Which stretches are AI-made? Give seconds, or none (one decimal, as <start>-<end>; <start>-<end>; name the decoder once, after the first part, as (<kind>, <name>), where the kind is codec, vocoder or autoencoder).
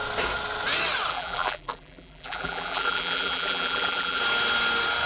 1.1-4.2 (vocoder, BigVGAN v2)